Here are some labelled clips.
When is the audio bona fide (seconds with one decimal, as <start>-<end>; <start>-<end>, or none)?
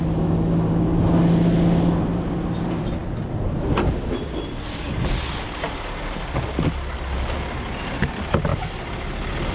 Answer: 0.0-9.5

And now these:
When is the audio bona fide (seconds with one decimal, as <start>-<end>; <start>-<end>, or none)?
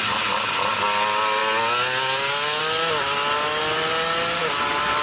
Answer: 0.0-5.0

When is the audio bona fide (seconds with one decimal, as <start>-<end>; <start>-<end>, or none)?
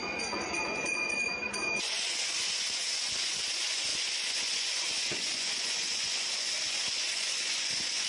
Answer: none